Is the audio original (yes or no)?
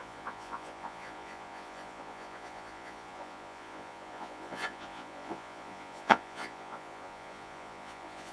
no